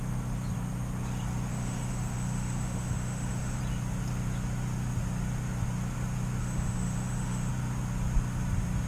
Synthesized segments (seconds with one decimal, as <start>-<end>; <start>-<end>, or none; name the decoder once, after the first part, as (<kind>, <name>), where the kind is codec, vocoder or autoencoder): 1.5-3.6 (autoencoder, DAC-VAE); 6.4-7.5